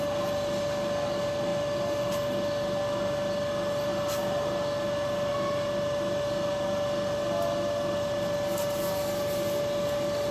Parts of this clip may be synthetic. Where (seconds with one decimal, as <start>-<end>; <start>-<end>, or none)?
none